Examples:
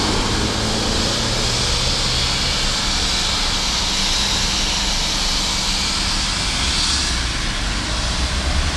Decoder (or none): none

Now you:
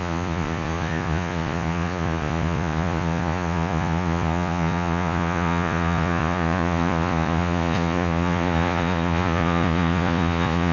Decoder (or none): vocoder, Vocos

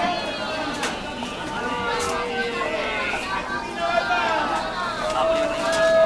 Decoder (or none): none